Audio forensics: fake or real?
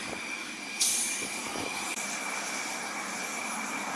real